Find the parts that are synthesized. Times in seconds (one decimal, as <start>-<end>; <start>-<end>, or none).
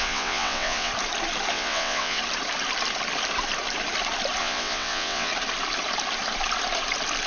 0.0-0.9; 1.5-2.2; 4.4-5.3